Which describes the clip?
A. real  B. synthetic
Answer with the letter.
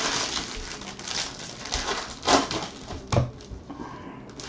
A